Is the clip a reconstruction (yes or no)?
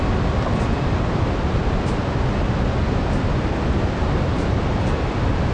no